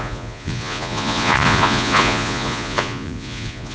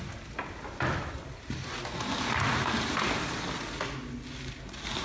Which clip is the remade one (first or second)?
first